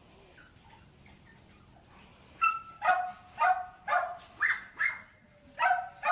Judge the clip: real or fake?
real